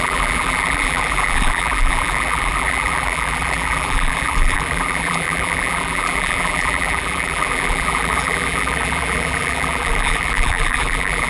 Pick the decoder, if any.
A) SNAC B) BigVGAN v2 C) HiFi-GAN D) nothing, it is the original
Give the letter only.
B